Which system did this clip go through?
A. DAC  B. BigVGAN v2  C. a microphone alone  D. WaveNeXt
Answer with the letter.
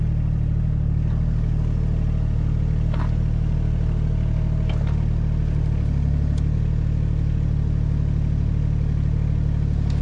C